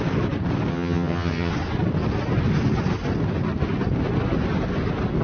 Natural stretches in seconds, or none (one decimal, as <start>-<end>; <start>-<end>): 0.0-0.7; 1.5-5.2